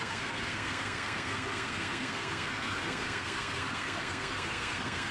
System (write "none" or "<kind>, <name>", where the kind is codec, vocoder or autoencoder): codec, SNAC